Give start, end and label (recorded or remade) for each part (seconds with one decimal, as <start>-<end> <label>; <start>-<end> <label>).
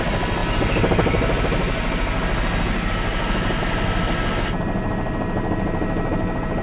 0.0-6.6 recorded